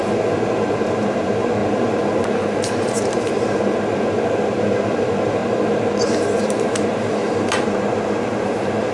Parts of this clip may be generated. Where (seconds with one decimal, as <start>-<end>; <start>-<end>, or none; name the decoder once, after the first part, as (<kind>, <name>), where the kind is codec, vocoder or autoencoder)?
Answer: 0.0-5.4 (vocoder, BigVGAN v2); 6.4-8.9